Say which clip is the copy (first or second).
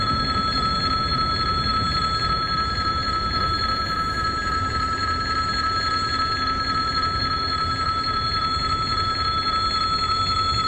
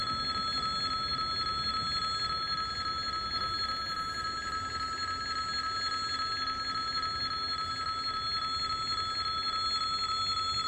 first